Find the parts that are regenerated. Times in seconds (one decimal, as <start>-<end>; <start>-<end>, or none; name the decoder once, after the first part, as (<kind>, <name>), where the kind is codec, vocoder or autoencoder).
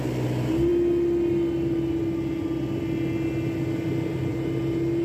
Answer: none